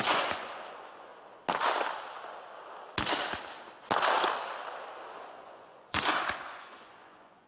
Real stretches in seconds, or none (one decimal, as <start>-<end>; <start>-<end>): 1.1-5.1